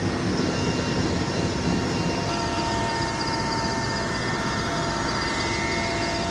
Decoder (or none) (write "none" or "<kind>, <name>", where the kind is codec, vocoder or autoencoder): none